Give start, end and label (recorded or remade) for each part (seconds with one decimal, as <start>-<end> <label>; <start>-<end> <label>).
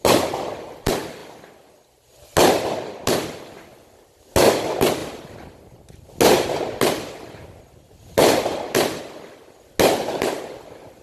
0.0-11.0 recorded